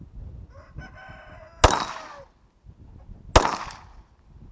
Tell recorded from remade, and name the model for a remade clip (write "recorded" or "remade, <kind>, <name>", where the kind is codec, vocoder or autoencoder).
recorded